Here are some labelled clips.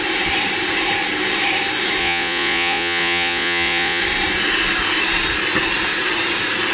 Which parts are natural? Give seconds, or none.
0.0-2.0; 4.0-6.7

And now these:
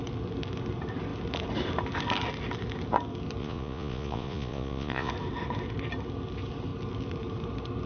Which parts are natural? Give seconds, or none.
0.0-3.4; 5.1-7.9

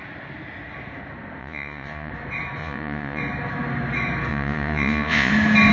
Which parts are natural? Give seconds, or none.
0.0-1.4; 2.1-2.6; 3.2-4.3; 5.3-5.7

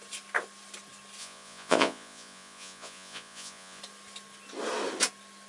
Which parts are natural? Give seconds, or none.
0.0-1.2; 3.8-5.5

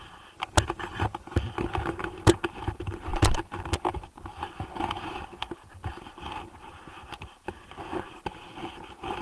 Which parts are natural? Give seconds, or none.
0.0-9.2

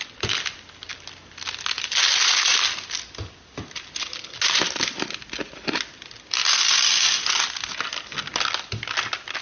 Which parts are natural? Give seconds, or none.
0.0-9.4

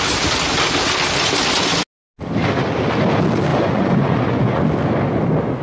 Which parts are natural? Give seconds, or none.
0.0-3.5; 4.6-5.6